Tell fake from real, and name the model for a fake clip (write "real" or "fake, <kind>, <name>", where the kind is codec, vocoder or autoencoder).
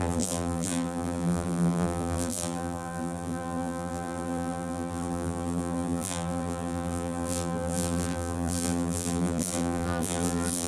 fake, vocoder, BigVGAN v2